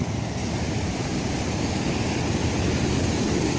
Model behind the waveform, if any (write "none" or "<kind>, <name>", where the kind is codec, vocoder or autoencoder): none